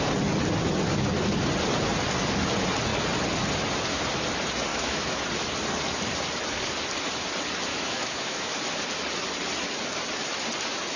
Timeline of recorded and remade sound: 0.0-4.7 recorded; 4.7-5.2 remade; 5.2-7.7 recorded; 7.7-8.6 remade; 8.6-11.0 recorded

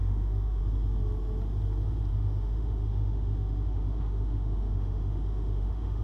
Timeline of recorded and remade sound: 0.0-0.6 remade; 0.6-2.1 recorded; 2.1-6.0 remade

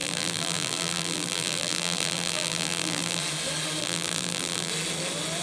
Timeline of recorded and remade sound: 0.0-3.2 remade; 3.2-3.8 recorded; 3.8-4.7 remade; 4.7-5.4 recorded

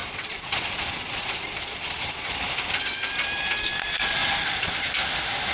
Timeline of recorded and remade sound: 0.0-2.3 remade; 2.3-4.2 recorded; 4.2-4.9 remade; 4.9-5.5 recorded

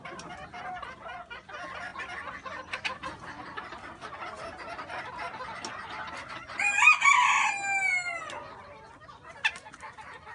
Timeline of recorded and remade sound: 0.0-10.3 recorded

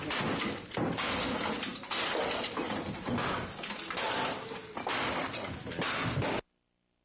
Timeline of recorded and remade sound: 0.0-7.0 recorded

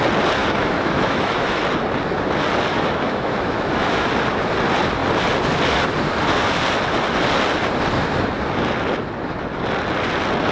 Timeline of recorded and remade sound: 0.0-0.4 recorded; 0.4-1.6 remade; 1.6-2.7 recorded; 2.7-4.1 remade; 4.1-10.5 recorded

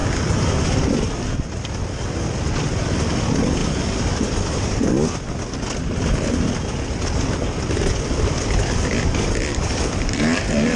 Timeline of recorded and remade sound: 0.0-10.8 recorded